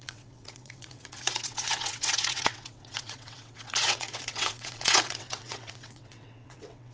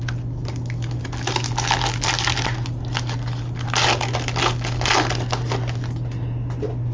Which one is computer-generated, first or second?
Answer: first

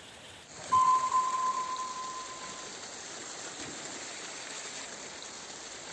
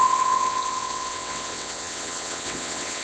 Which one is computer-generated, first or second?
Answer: second